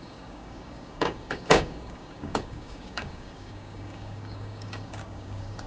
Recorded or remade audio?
remade